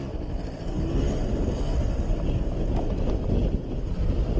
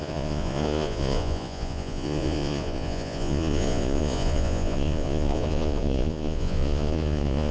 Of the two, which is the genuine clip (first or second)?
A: first